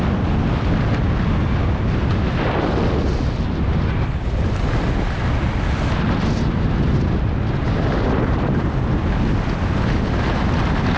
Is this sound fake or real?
real